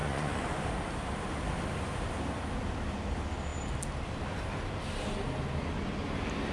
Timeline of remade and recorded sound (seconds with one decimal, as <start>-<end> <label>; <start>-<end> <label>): 0.0-0.7 remade; 0.7-6.5 recorded